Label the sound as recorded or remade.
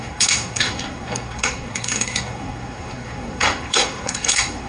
remade